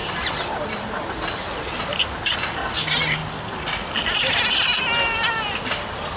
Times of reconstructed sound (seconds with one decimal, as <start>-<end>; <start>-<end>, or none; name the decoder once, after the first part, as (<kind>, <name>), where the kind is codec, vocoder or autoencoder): 0.7-3.2 (vocoder, BigVGAN v2); 3.8-6.2